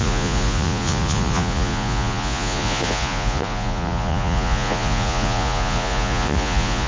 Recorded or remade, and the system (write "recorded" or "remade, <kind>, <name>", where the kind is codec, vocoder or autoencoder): remade, vocoder, Vocos